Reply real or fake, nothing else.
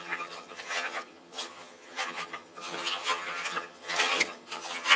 fake